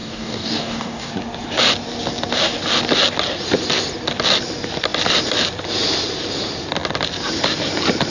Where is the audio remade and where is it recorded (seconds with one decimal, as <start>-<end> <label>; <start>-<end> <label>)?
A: 0.0-1.1 remade; 1.1-8.1 recorded